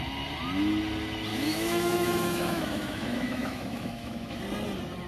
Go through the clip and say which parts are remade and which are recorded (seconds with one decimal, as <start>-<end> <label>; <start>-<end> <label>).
0.0-1.3 recorded; 1.3-4.4 remade; 4.4-5.1 recorded